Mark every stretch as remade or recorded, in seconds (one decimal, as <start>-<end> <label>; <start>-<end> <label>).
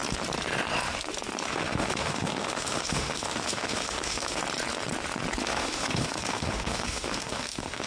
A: 0.0-1.5 recorded; 1.5-4.4 remade; 4.4-5.4 recorded; 5.4-7.9 remade